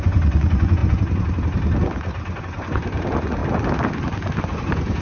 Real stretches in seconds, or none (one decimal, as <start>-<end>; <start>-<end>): 0.8-2.4; 3.4-4.4